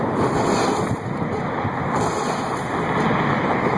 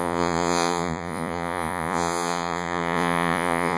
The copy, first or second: second